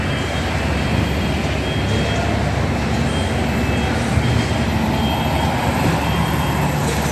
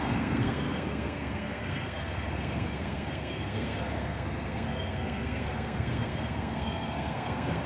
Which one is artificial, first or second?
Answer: second